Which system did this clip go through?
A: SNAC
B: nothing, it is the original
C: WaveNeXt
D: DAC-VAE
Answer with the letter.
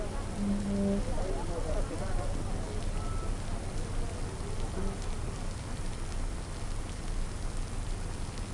B